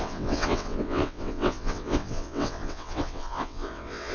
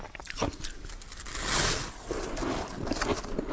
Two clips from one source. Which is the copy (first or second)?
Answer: first